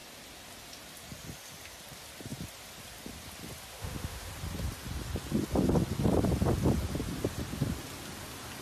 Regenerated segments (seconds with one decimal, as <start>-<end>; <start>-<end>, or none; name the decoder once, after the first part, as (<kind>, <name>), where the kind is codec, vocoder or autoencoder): 3.7-4.3 (autoencoder, DAC-VAE)

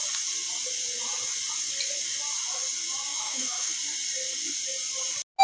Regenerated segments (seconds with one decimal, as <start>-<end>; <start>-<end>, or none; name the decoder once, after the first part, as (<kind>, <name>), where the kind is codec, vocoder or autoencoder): 3.1-3.7 (autoencoder, DAC-VAE)

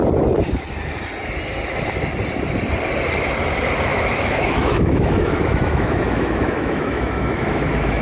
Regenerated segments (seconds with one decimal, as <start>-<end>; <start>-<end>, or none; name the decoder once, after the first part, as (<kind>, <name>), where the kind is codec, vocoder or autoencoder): 3.9-8.0 (autoencoder, DAC-VAE)

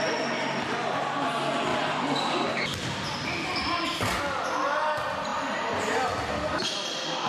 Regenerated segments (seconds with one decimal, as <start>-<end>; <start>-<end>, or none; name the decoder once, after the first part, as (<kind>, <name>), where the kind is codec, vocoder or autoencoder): none

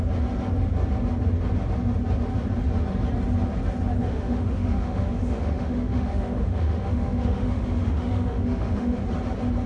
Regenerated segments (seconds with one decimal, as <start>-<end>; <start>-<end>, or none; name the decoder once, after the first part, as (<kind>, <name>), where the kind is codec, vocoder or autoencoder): 4.0-9.0 (autoencoder, DAC-VAE)

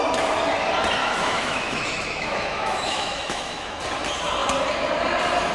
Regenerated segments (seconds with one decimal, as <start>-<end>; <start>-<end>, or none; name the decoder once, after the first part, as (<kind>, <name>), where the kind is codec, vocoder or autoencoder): 1.0-3.8 (autoencoder, DAC-VAE)

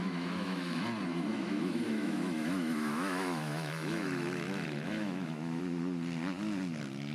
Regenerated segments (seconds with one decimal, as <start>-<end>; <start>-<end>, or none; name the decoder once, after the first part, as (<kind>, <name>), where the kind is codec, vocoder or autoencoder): 0.0-0.8 (autoencoder, DAC-VAE); 1.3-5.6